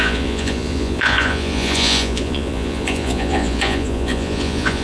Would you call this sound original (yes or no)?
no